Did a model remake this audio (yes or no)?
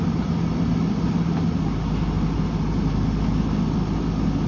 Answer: no